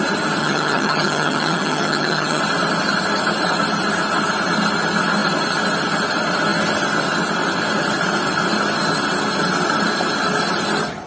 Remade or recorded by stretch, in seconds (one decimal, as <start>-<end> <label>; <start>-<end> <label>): 0.0-0.4 recorded; 0.4-2.4 remade; 2.4-11.1 recorded